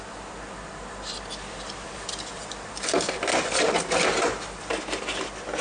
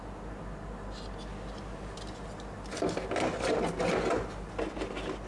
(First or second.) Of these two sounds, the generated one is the first